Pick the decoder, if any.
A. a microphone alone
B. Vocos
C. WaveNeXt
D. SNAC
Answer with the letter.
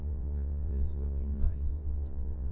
C